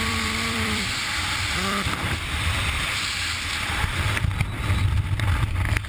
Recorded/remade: remade